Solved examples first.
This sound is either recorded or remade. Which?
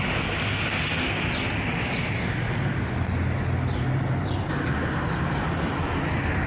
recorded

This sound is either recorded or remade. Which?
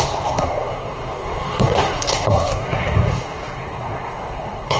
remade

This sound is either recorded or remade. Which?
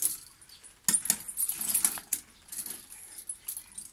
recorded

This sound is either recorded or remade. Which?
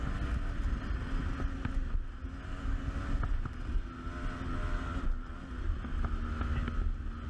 recorded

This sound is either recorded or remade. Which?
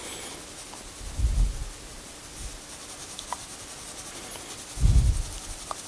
recorded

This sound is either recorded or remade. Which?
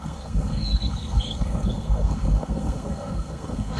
remade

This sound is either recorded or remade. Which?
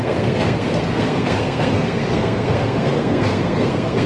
remade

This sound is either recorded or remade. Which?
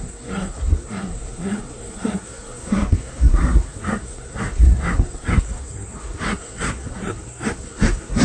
remade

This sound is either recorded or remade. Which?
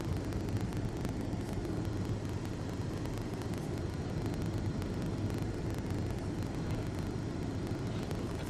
recorded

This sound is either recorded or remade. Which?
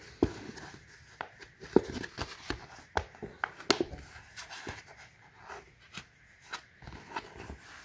recorded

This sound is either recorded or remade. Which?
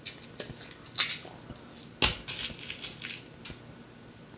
recorded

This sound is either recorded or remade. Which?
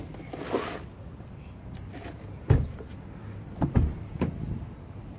recorded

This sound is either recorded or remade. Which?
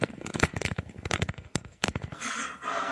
remade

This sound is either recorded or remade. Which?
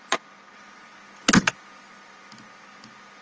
recorded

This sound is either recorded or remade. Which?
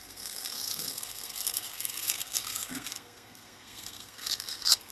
remade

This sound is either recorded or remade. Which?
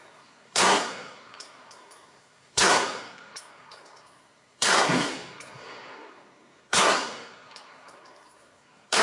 remade